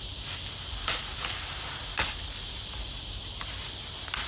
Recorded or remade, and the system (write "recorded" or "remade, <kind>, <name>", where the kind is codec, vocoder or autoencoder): recorded